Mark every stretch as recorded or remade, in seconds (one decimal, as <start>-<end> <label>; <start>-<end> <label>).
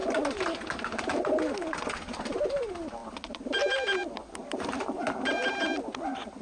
0.0-1.1 recorded; 1.1-6.4 remade